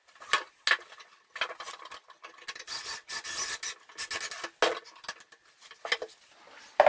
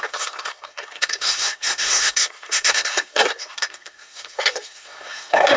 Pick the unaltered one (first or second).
first